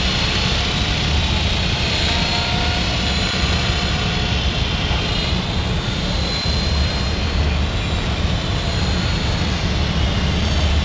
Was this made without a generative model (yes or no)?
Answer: yes